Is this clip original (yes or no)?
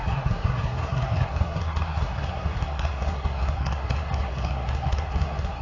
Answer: no